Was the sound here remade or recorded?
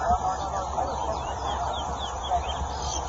recorded